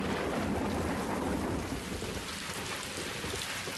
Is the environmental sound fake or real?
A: real